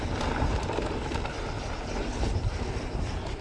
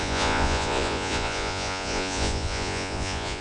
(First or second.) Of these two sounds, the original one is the first